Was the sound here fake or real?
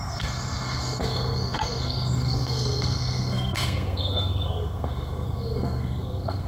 fake